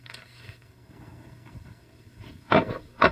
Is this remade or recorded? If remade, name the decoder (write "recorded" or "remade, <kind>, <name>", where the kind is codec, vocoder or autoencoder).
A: remade, codec, SNAC